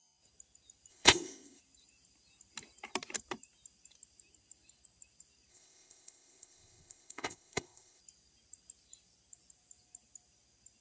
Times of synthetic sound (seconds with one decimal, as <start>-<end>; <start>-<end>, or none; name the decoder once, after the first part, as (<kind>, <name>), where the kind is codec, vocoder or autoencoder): 0.9-1.6 (codec, ZipCodec); 5.5-8.0